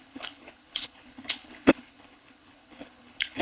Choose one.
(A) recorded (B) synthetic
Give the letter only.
B